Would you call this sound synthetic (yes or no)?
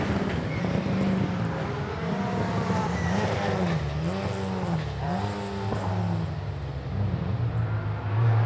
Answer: no